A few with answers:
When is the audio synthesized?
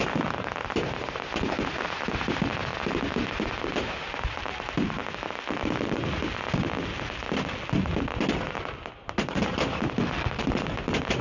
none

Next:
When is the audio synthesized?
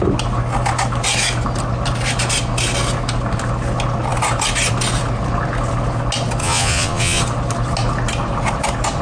6.4-7.2 (vocoder, Vocos)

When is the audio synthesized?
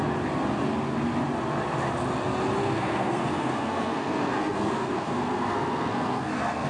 2.6-6.7 (codec, SNAC)